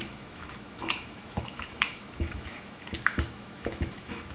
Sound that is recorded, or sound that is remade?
remade